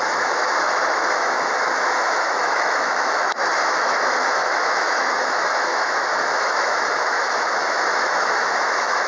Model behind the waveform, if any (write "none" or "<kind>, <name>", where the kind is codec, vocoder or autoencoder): autoencoder, DAC-VAE